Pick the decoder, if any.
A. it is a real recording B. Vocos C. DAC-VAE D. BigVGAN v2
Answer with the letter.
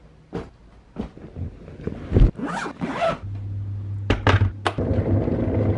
A